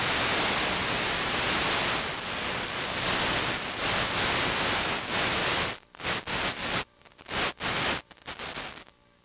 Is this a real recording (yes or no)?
yes